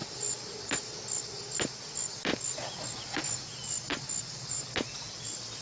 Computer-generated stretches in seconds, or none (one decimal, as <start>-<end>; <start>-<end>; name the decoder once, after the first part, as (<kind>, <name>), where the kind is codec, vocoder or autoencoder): none